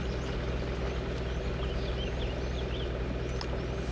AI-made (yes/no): no